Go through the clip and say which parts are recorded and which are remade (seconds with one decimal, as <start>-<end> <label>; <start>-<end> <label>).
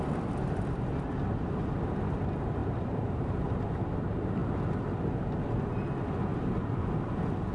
0.0-2.6 recorded; 2.6-3.9 remade; 3.9-6.3 recorded; 6.3-7.1 remade; 7.1-7.5 recorded